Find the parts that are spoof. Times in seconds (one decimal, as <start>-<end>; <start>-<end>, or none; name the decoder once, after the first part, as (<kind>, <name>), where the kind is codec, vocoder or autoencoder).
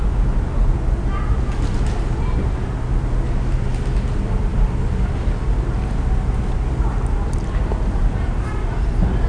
none